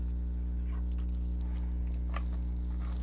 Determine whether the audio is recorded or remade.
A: recorded